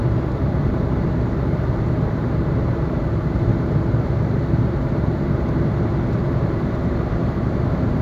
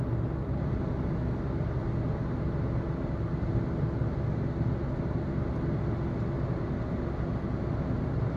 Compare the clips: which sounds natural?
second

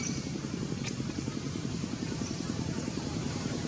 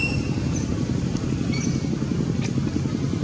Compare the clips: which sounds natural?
second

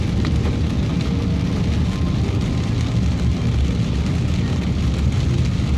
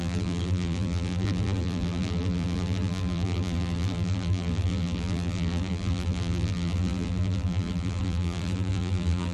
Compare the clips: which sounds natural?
first